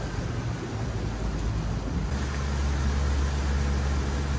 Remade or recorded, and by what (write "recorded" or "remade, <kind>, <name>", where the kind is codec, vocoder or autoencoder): recorded